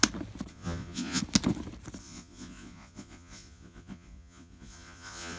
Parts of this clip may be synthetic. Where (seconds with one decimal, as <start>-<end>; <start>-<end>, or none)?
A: 0.5-1.2; 2.0-5.4